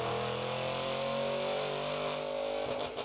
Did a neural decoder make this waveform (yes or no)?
no